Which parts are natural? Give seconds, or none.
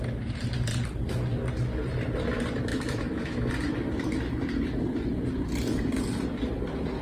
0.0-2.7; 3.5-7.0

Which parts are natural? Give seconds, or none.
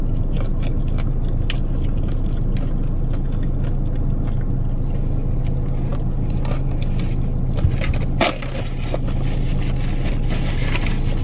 0.0-11.2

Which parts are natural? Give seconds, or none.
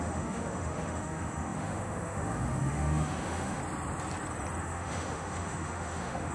3.6-4.6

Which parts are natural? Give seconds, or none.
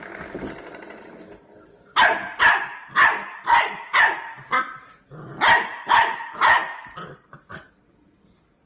0.0-8.7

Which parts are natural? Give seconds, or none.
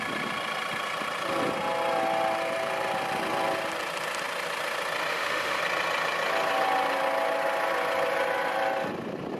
0.0-5.1; 5.6-9.4